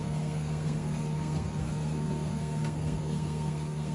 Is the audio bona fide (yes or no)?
no